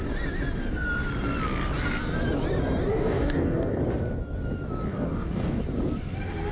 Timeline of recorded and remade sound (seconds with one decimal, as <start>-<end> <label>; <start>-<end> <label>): 0.0-2.9 recorded; 2.9-3.8 remade; 3.8-4.9 recorded; 4.9-5.6 remade; 5.6-6.5 recorded